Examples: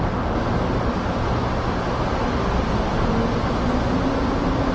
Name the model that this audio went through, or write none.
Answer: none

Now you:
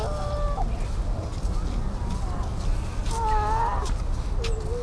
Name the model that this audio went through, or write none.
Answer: none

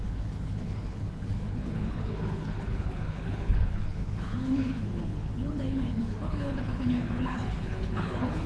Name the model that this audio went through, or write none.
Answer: codec, HILCodec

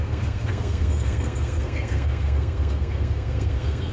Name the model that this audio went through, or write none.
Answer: codec, SNAC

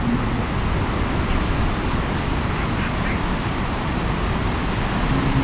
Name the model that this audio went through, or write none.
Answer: none